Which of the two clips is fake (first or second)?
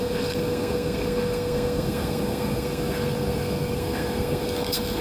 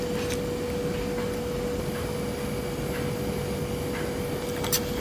first